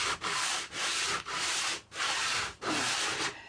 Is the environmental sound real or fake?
fake